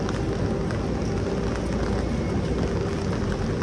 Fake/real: real